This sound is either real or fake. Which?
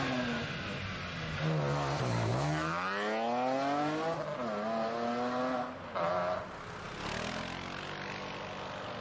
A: real